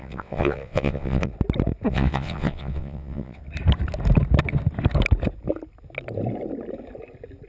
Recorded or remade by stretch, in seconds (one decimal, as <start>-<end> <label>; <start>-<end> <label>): 0.0-1.3 remade; 1.3-1.9 recorded; 1.9-3.4 remade; 3.4-7.5 recorded